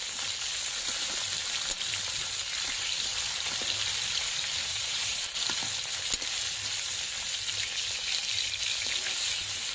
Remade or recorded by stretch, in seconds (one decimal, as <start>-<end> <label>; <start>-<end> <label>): 0.0-4.6 recorded; 4.6-5.2 remade; 5.2-9.7 recorded